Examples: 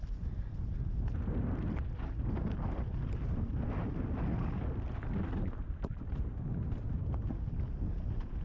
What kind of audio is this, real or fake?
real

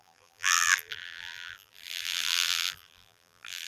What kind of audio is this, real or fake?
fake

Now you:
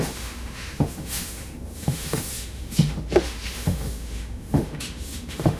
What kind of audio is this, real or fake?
fake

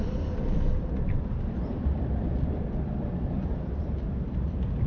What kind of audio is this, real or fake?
fake